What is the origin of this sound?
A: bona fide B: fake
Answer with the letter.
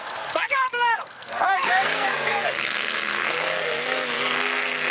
B